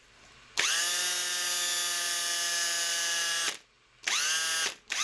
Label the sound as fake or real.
real